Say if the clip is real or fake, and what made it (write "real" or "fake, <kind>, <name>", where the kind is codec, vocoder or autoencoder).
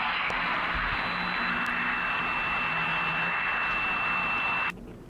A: real